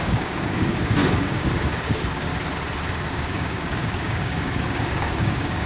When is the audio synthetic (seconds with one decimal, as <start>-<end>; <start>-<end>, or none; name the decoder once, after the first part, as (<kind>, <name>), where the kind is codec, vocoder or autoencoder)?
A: 0.0-2.3 (codec, DAC); 3.1-5.7